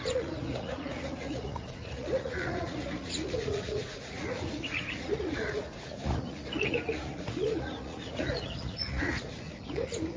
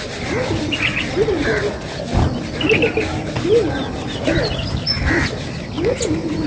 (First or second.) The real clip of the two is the second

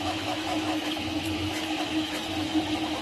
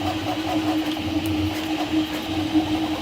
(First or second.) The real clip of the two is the second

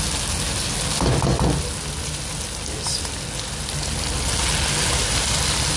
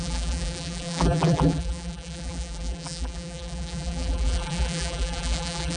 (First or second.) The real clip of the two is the first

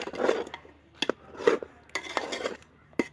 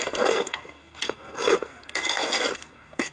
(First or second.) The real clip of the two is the first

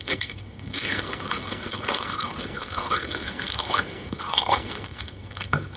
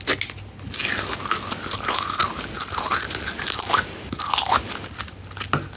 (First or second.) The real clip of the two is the second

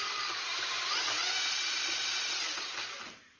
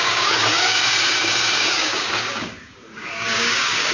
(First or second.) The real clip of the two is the first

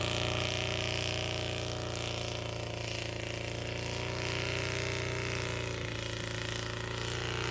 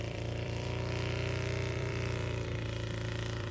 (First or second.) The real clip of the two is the first